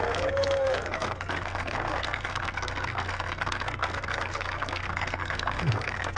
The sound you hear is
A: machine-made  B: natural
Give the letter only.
A